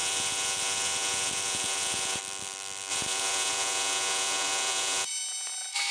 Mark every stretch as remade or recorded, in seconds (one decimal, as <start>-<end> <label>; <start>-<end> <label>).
0.0-2.2 remade; 2.2-2.9 recorded; 2.9-5.1 remade; 5.1-5.9 recorded